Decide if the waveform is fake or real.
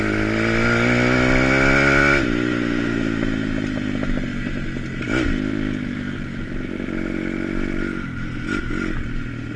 real